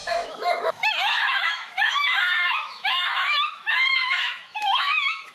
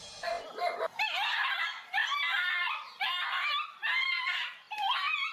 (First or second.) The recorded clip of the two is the second